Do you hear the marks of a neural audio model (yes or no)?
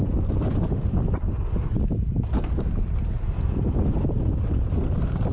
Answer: yes